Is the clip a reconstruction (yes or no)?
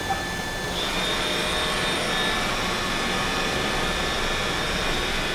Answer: no